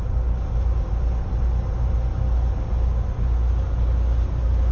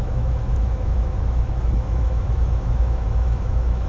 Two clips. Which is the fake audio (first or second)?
second